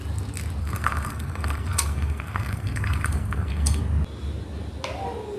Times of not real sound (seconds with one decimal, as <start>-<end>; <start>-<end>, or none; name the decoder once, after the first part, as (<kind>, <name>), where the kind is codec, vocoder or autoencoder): 0.6-3.8 (codec, SNAC)